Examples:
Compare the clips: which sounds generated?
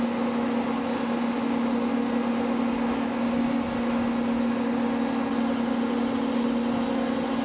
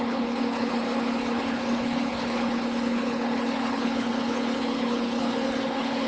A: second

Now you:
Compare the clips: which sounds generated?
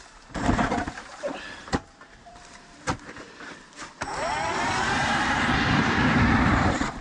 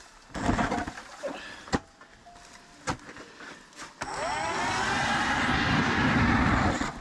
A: first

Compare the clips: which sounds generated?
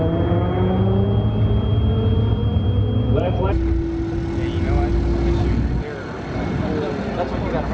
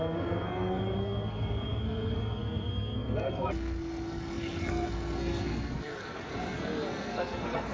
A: second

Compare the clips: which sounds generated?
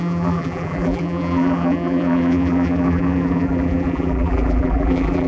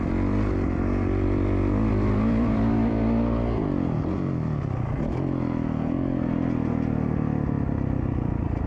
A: first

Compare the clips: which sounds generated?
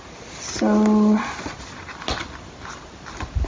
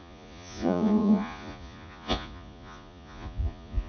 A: second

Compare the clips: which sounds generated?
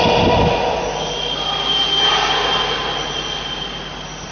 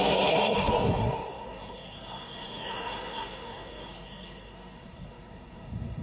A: second